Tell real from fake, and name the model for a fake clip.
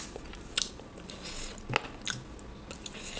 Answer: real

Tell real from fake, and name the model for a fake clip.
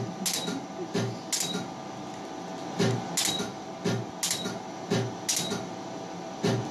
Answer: real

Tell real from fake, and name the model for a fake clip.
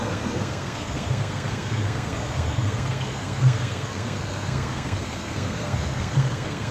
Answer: fake, codec, SNAC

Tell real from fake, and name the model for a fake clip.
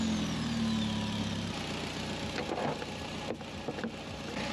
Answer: real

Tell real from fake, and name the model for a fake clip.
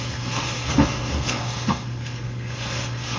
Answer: fake, codec, SNAC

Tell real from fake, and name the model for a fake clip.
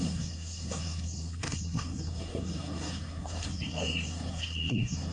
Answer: fake, codec, SNAC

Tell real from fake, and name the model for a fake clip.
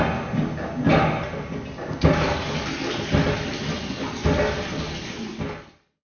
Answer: real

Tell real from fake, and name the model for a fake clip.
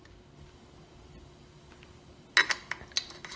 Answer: real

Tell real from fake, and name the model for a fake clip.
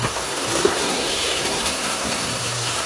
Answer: fake, codec, SNAC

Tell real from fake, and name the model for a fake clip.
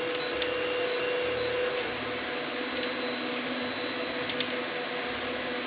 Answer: real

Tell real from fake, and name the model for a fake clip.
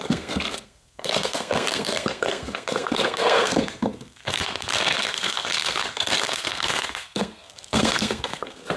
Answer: fake, codec, SNAC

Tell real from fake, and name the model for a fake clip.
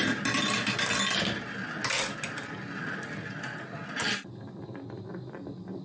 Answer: real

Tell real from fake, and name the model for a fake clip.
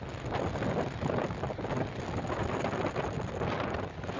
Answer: real